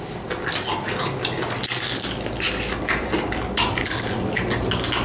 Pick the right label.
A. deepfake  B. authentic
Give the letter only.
B